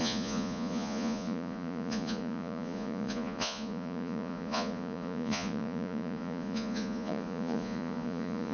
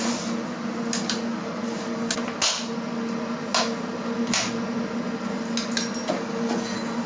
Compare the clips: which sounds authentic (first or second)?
second